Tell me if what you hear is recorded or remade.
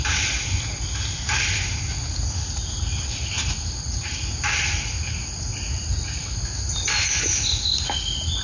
recorded